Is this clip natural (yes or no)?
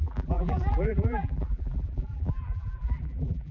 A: no